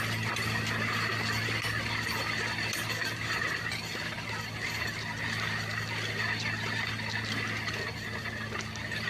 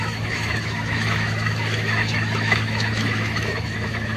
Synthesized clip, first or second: second